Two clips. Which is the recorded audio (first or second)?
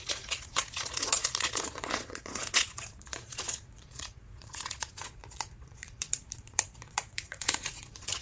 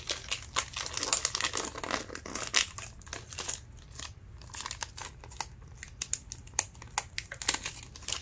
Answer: second